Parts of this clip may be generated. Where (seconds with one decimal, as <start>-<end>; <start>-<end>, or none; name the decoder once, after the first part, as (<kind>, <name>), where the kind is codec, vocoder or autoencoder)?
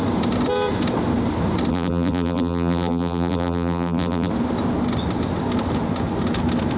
1.7-4.3 (vocoder, BigVGAN v2)